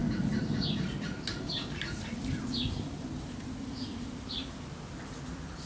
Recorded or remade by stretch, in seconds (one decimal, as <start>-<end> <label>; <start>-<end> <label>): 0.0-5.7 recorded